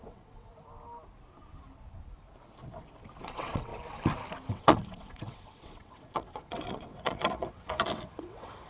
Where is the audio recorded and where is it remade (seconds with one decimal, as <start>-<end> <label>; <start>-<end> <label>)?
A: 0.0-0.5 remade; 0.5-3.2 recorded; 3.2-3.7 remade; 3.7-4.5 recorded; 4.5-8.7 remade